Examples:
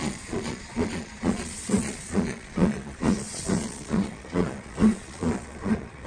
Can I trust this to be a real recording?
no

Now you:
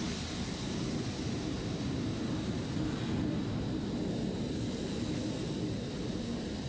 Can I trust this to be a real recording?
yes